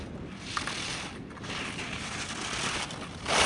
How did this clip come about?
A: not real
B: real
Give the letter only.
B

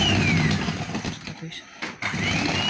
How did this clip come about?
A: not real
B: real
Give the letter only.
B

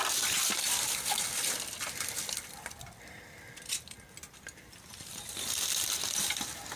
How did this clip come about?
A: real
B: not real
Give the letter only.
A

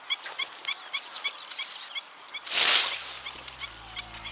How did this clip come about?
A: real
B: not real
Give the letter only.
A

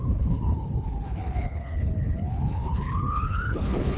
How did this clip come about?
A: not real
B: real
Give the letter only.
A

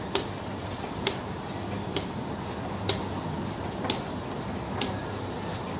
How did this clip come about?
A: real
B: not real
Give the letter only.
B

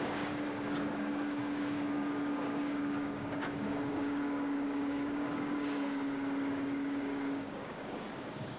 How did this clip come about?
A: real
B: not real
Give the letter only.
B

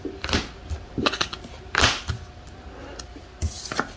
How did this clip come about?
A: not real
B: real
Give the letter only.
B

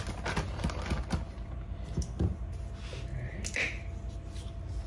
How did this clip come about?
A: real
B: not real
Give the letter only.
A